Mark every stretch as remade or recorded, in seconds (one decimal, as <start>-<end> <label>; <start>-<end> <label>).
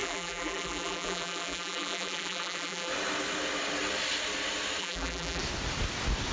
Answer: 0.0-2.9 remade; 2.9-4.8 recorded; 4.8-5.4 remade; 5.4-6.3 recorded